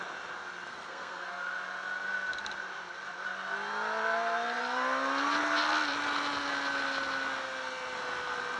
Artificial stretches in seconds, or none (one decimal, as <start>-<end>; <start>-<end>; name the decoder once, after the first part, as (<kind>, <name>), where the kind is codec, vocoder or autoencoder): 0.7-1.3 (codec, SNAC)